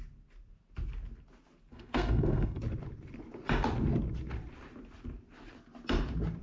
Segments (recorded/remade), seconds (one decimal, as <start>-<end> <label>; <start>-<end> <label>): 0.0-1.7 recorded; 1.7-2.6 remade; 2.6-6.4 recorded